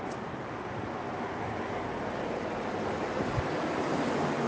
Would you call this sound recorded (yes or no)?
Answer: yes